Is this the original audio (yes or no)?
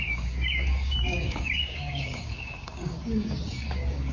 no